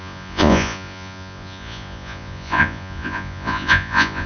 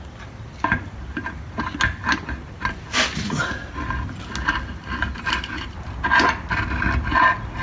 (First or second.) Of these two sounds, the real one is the second